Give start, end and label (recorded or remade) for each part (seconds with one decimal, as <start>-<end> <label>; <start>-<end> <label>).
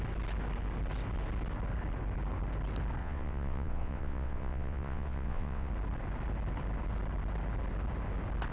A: 0.0-3.0 recorded; 3.0-5.7 remade; 5.7-8.5 recorded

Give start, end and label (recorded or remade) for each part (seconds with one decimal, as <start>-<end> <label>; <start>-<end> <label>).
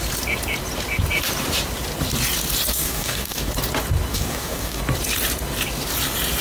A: 0.0-2.7 recorded; 2.7-3.5 remade; 3.5-4.1 recorded; 4.1-4.8 remade; 4.8-6.4 recorded